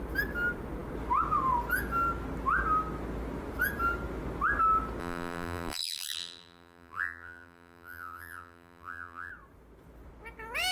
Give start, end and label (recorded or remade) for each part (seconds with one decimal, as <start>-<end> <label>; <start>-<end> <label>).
0.0-5.0 recorded; 5.0-9.3 remade; 9.3-10.7 recorded